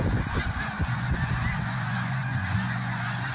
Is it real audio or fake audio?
fake